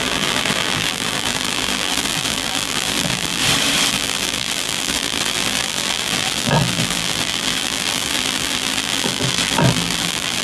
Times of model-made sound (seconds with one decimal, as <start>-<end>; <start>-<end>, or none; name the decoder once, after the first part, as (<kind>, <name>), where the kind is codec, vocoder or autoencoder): 0.0-3.4 (vocoder, BigVGAN v2); 3.9-10.4